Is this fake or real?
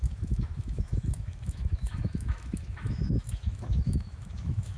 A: fake